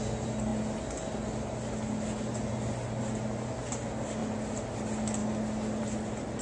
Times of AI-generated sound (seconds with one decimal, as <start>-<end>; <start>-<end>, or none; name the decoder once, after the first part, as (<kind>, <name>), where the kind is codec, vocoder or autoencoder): none

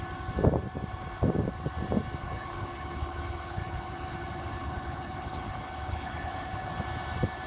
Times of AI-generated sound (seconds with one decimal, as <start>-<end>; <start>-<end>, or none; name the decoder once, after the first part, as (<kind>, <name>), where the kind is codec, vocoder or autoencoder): 2.2-6.7 (codec, HILCodec)

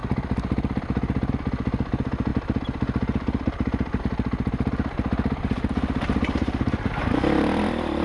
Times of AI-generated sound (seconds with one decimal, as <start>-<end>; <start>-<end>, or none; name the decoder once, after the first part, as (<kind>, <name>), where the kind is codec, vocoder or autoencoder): 0.0-1.3 (vocoder, BigVGAN v2)

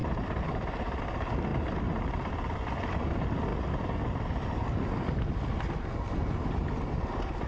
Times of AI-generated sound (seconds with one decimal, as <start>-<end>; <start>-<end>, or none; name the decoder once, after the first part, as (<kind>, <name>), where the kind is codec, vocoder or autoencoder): 0.0-1.0 (vocoder, BigVGAN v2); 1.5-2.3

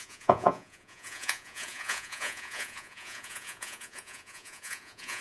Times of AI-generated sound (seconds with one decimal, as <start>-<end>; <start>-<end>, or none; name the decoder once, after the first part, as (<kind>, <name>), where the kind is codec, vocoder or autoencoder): 0.0-5.2 (vocoder, Vocos)

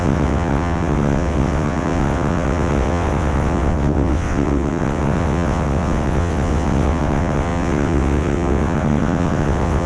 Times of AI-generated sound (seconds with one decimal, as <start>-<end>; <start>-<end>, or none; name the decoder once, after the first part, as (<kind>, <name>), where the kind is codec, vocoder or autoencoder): 0.0-9.9 (vocoder, WaveNeXt)

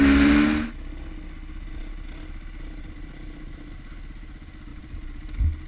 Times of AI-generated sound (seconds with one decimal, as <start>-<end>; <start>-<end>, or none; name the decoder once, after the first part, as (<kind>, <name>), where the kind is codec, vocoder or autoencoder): none